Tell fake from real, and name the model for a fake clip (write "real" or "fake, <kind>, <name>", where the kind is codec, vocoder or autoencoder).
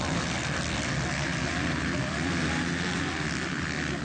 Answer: real